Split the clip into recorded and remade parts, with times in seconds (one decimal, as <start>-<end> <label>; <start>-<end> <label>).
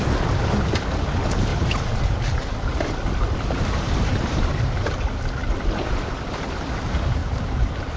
0.0-1.5 recorded; 1.5-4.9 remade; 4.9-5.4 recorded; 5.4-6.1 remade; 6.1-7.2 recorded; 7.2-8.0 remade